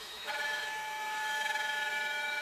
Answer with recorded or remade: remade